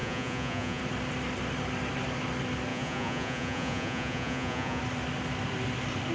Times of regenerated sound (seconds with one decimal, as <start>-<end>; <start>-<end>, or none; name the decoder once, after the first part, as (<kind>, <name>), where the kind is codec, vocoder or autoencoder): 0.0-0.8 (vocoder, Vocos); 2.7-4.8